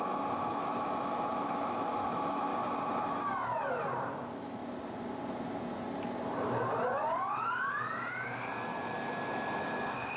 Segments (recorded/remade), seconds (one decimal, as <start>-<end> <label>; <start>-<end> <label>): 0.0-2.5 remade; 2.5-4.1 recorded; 4.1-4.6 remade; 4.6-9.6 recorded; 9.6-10.2 remade

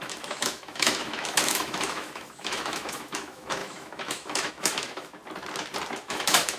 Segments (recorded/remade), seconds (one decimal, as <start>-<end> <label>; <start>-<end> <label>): 0.0-5.2 remade; 5.2-6.0 recorded; 6.0-6.6 remade

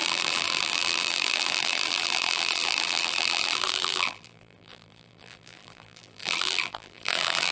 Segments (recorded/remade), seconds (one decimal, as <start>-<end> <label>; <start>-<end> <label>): 0.0-7.5 remade

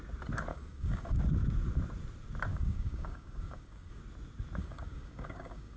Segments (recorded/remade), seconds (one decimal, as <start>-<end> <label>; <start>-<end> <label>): 0.0-0.5 recorded; 0.5-1.2 remade; 1.2-2.5 recorded; 2.5-4.0 remade; 4.0-4.6 recorded; 4.6-5.8 remade

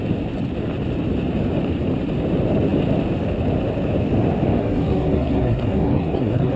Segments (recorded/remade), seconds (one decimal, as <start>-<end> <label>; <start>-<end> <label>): 0.0-4.6 recorded; 4.6-6.6 remade

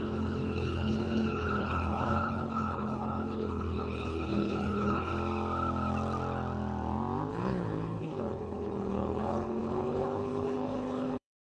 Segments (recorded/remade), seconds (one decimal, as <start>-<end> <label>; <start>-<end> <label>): 0.0-5.1 remade; 5.1-7.3 recorded; 7.3-11.6 remade

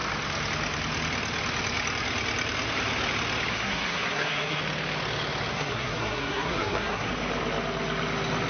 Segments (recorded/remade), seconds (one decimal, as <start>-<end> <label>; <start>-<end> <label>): 0.0-3.5 recorded; 3.5-4.6 remade; 4.6-5.5 recorded; 5.5-7.1 remade; 7.1-8.5 recorded

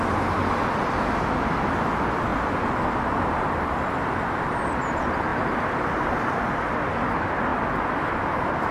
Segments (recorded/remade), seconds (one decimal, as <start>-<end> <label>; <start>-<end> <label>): 0.0-8.7 recorded